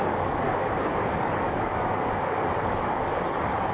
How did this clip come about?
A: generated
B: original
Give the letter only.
A